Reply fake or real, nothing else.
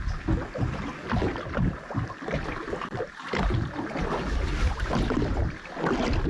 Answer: real